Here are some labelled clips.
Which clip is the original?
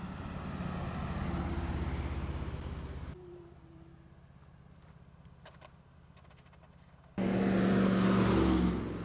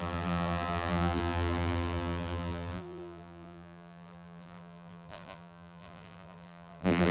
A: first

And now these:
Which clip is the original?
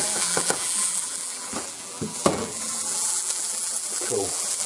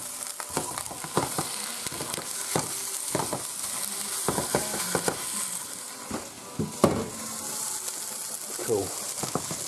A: second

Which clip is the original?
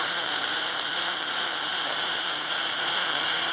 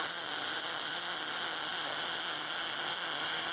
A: second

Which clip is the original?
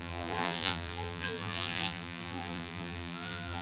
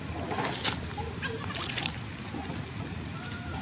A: second